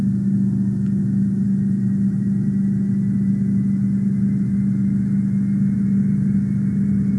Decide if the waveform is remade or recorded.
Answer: recorded